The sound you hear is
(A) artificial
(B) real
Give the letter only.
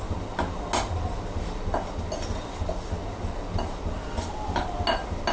B